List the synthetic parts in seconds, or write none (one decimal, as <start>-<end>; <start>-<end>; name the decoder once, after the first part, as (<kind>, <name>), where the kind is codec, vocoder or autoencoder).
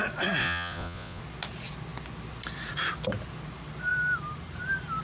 0.4-1.2 (vocoder, Vocos)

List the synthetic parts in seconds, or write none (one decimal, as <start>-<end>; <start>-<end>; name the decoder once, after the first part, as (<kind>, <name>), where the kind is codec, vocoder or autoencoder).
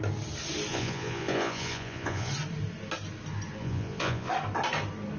0.7-2.3 (vocoder, Vocos); 3.6-4.3